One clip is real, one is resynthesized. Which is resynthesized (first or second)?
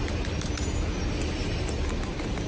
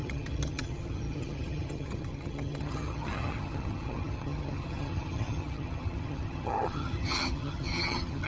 second